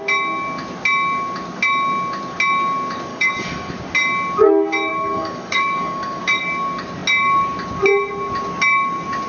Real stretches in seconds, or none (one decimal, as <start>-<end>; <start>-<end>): 0.0-3.1; 3.7-4.9; 6.2-9.3